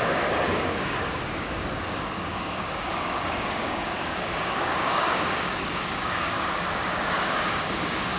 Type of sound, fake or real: fake